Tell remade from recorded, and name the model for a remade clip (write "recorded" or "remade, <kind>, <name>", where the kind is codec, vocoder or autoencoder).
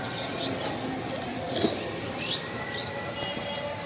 recorded